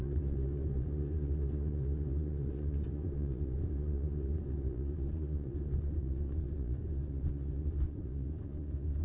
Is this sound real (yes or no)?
no